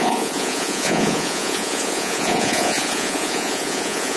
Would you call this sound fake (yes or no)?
yes